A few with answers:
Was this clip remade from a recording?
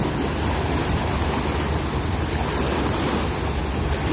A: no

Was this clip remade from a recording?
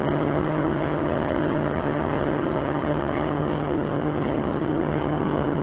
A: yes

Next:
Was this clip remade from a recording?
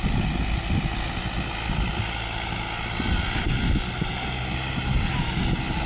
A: no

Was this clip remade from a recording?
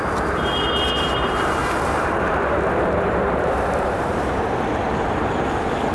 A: yes